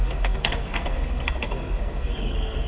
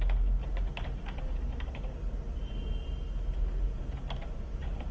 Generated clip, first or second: first